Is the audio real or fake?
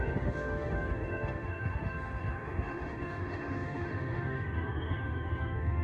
fake